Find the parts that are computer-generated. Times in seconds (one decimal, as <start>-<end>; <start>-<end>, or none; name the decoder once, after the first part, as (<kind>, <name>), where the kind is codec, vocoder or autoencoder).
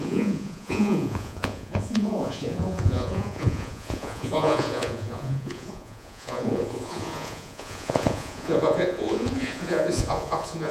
0.0-10.7 (vocoder, Vocos)